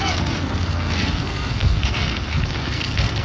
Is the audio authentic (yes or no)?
no